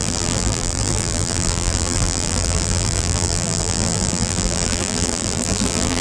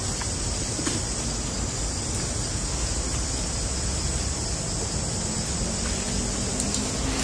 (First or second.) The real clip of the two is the second